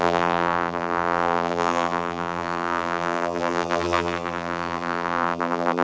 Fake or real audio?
fake